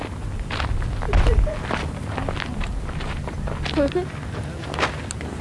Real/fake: real